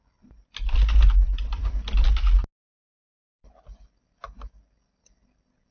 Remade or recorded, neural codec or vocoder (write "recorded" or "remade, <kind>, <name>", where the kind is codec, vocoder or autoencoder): recorded